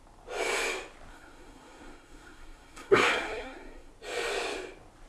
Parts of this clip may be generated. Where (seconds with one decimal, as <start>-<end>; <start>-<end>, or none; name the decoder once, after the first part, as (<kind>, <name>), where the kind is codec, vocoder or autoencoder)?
1.1-3.9 (codec, SNAC)